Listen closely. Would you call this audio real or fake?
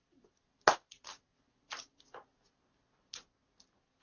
real